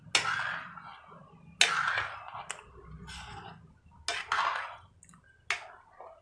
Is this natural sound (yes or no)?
yes